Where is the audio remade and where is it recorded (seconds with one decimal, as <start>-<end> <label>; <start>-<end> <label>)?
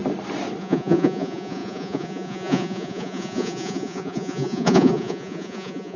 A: 0.0-0.6 recorded; 0.6-6.0 remade